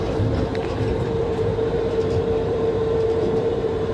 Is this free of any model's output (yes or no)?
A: no